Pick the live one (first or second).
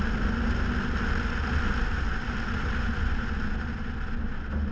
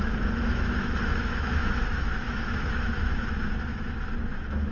first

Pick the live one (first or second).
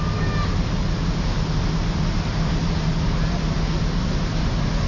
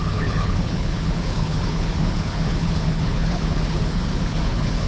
first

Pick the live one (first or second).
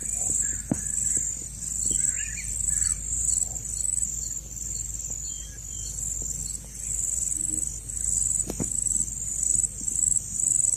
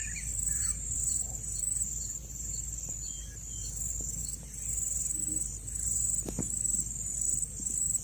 first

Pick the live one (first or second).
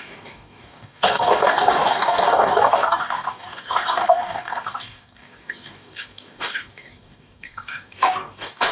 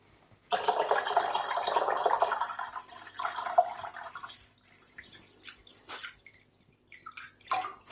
second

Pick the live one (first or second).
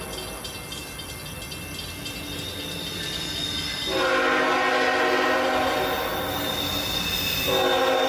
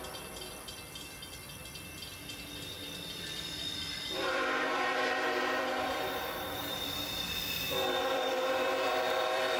first